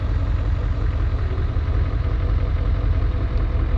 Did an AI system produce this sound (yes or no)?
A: yes